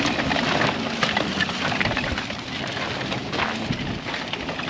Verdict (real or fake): real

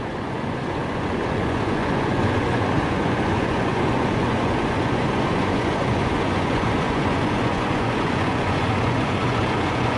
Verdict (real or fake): fake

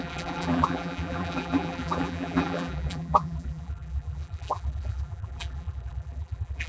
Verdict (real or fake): fake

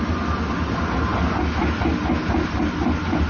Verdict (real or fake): real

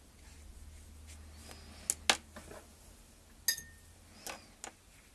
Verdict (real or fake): real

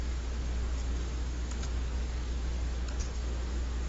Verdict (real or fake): fake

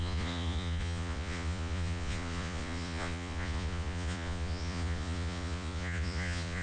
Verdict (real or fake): fake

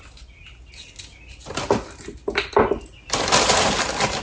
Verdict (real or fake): real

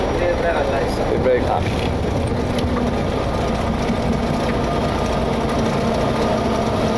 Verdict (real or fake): real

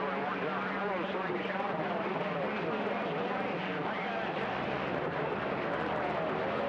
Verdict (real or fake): real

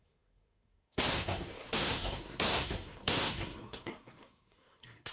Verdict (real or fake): fake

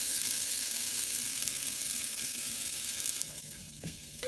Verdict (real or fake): fake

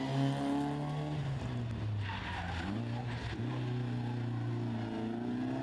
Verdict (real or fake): real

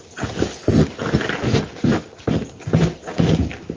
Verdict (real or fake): real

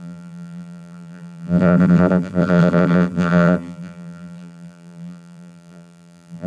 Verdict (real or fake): fake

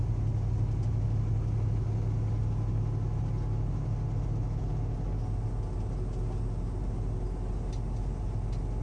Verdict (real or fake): real